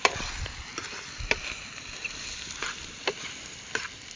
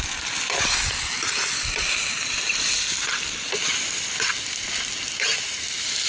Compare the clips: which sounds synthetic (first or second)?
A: first